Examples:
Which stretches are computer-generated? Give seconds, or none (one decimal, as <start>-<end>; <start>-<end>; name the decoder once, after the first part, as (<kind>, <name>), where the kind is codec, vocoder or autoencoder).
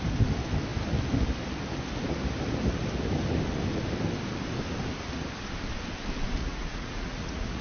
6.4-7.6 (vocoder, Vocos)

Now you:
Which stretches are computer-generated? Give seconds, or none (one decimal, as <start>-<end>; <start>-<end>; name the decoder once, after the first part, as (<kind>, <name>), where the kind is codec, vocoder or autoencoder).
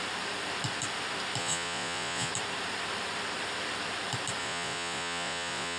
1.4-2.3 (vocoder, Vocos); 4.4-5.8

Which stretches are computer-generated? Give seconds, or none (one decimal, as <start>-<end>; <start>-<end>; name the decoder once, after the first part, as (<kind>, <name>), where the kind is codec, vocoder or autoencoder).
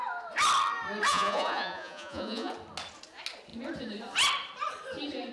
1.1-2.5 (vocoder, Vocos)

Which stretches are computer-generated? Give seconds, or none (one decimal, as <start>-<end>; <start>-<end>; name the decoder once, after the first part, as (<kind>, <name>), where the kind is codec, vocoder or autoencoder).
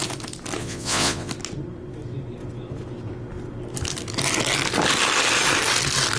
0.6-1.3 (vocoder, Vocos)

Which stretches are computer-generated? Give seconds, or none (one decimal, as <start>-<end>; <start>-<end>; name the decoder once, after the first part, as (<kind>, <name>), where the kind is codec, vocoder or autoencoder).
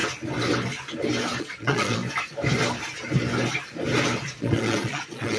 1.4-2.0 (vocoder, Vocos); 4.3-5.4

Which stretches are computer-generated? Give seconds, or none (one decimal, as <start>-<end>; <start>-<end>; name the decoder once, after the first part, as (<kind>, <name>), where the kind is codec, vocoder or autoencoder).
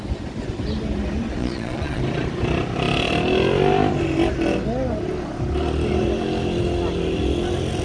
1.4-2.0 (vocoder, Vocos)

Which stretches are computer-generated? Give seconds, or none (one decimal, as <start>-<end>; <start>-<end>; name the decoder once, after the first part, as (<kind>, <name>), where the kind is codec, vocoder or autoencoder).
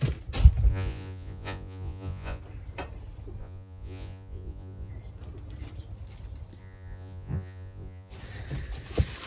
0.7-2.4 (vocoder, Vocos); 3.4-4.9; 6.6-8.1